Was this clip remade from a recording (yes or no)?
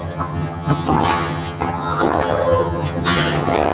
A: yes